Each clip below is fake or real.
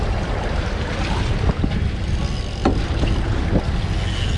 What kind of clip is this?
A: real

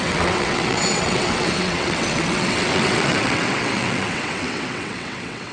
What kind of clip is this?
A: fake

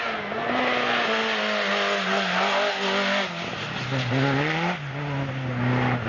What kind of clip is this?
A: real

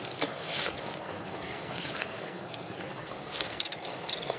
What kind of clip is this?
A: fake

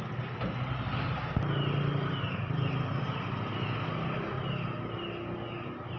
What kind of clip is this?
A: real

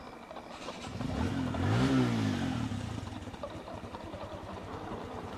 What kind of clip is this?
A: real